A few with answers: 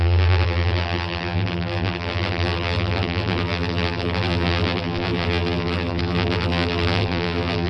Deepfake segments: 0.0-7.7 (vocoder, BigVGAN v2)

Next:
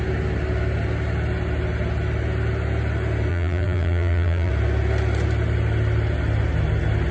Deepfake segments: 3.3-4.5 (vocoder, BigVGAN v2)